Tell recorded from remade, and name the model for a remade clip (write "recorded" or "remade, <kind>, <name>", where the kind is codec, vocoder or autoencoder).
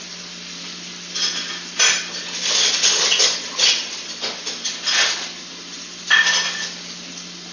recorded